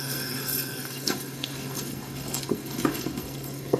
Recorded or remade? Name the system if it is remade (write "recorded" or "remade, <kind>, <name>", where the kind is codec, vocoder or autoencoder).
remade, codec, SNAC